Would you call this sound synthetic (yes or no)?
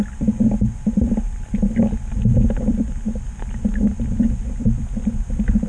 yes